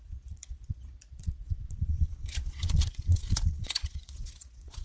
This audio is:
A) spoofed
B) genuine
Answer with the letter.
A